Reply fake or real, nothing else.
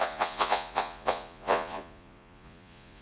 fake